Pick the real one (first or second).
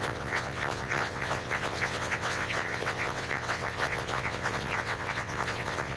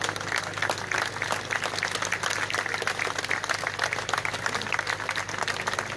second